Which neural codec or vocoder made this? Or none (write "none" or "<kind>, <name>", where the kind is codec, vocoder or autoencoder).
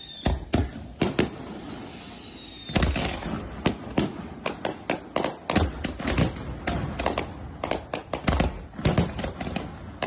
none